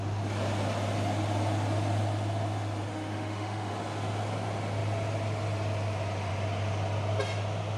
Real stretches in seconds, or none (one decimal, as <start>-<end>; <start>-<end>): 0.0-2.9; 3.7-7.8